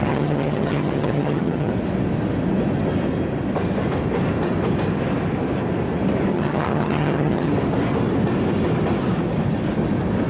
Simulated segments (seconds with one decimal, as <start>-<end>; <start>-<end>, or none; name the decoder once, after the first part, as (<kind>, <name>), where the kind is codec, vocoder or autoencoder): 0.0-1.7 (vocoder, HiFi-GAN); 6.3-7.5